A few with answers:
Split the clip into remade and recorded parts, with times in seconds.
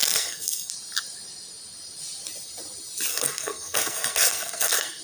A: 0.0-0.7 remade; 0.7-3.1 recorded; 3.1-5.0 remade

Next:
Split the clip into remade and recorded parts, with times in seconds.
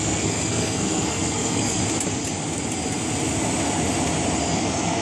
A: 0.0-1.8 remade; 1.8-4.6 recorded; 4.6-5.0 remade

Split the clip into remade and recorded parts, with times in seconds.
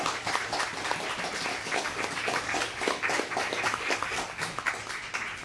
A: 0.0-1.5 recorded; 1.5-4.7 remade; 4.7-5.4 recorded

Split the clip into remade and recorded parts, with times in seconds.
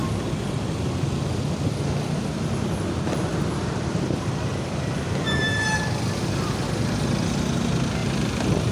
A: 0.0-8.0 recorded; 8.0-8.7 remade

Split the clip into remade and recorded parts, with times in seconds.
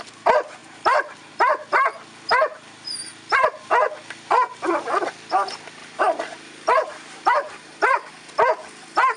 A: 0.0-0.6 recorded; 0.6-1.3 remade; 1.3-5.8 recorded; 5.8-8.1 remade; 8.1-9.2 recorded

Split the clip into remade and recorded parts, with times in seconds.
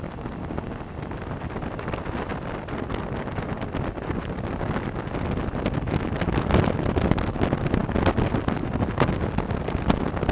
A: 0.0-10.3 recorded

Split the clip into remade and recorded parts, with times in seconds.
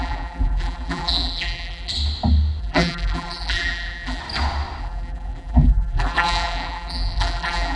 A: 0.0-1.9 remade; 1.9-2.6 recorded; 2.6-4.2 remade; 4.2-4.8 recorded; 4.8-7.8 remade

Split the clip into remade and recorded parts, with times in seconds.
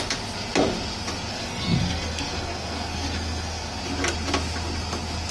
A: 0.0-1.3 recorded; 1.3-3.8 remade; 3.8-5.3 recorded